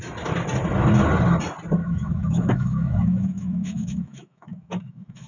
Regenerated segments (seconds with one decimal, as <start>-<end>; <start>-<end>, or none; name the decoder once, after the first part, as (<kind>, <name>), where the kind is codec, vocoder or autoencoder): 1.8-5.3 (autoencoder, DAC-VAE)